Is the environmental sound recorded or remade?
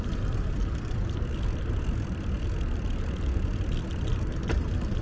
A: recorded